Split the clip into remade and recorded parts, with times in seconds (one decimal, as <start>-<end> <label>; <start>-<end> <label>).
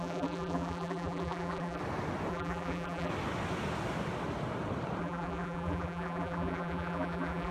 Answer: 0.0-1.8 remade; 1.8-2.3 recorded; 2.3-3.1 remade; 3.1-5.0 recorded; 5.0-7.5 remade